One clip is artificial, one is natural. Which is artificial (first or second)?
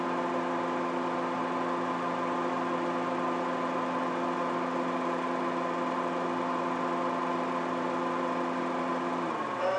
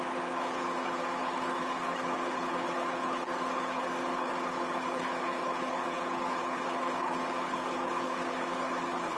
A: second